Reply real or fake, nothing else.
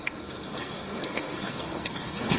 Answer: fake